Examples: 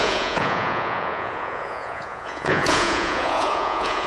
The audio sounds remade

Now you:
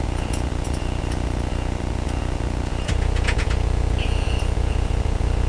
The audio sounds remade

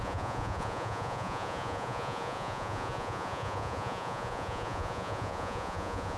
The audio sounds remade